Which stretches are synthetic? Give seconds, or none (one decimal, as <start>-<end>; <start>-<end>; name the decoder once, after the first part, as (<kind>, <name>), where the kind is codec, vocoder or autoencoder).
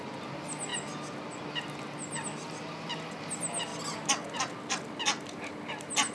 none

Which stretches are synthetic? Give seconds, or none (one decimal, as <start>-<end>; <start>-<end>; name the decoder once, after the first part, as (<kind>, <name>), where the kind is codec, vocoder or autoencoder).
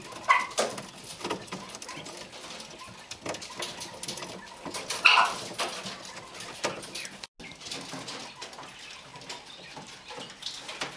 none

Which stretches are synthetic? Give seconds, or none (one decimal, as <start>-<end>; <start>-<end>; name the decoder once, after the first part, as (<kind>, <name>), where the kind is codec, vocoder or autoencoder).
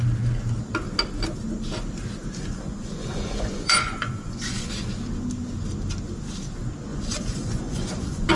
2.4-5.0 (vocoder, Vocos); 6.9-8.3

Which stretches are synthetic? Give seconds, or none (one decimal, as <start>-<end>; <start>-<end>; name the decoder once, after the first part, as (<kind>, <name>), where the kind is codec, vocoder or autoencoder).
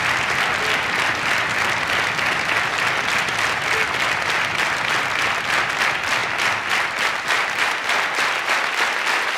none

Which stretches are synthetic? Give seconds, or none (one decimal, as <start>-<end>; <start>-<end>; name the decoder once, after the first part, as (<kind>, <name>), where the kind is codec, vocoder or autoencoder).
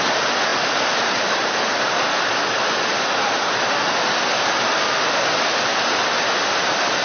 none